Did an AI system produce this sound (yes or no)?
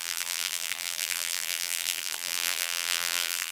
yes